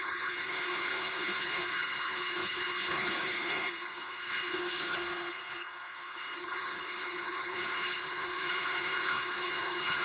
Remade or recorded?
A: remade